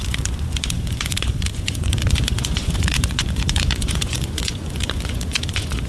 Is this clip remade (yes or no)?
yes